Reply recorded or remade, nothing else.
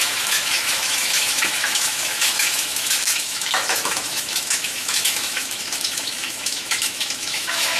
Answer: remade